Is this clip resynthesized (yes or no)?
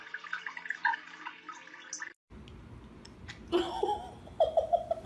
no